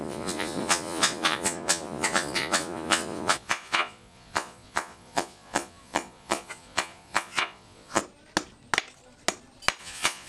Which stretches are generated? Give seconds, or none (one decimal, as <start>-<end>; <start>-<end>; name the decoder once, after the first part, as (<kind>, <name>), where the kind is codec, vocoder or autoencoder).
0.0-8.0 (vocoder, Vocos); 9.8-10.3